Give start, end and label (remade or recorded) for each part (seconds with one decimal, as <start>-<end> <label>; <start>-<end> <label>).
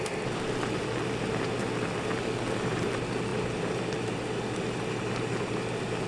0.0-6.1 recorded